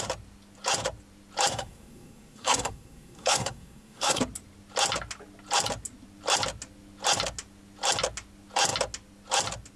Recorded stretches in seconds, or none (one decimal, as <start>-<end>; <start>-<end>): 0.0-1.5; 4.2-9.8